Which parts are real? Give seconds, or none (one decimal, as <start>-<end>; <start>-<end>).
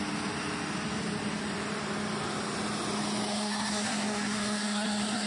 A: 0.0-3.3